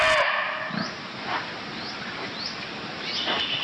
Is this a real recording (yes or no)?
yes